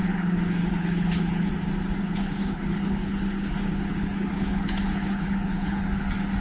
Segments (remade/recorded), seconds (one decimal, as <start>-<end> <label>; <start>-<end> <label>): 0.0-1.5 remade; 1.5-2.0 recorded; 2.0-5.8 remade; 5.8-6.4 recorded